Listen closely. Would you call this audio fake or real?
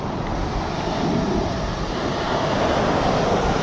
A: real